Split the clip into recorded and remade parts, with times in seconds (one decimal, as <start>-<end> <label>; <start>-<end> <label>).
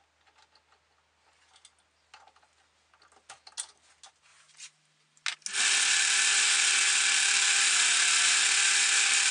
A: 0.0-9.3 recorded